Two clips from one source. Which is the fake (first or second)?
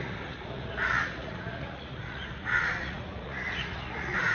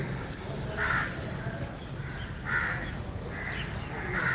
first